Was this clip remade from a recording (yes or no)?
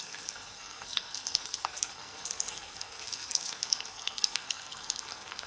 yes